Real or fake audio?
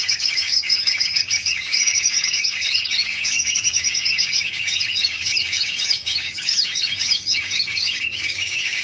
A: fake